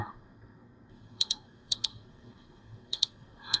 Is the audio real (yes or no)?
no